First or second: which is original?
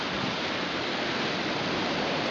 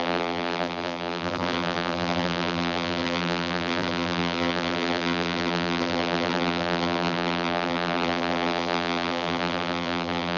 first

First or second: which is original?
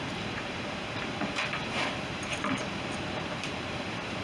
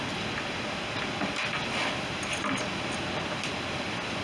second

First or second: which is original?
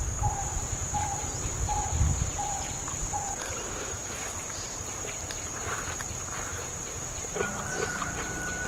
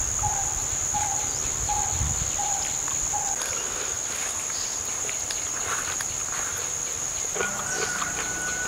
second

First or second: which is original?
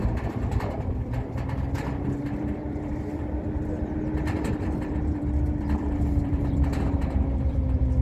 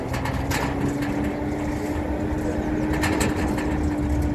second